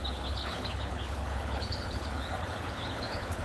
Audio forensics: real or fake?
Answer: fake